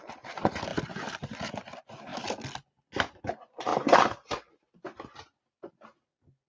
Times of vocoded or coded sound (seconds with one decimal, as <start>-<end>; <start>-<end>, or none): none